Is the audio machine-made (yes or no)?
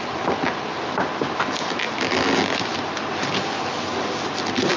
no